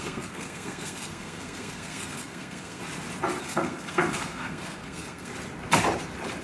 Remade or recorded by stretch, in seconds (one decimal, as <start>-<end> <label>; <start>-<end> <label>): 0.0-2.8 remade; 2.8-3.4 recorded; 3.4-5.3 remade; 5.3-6.4 recorded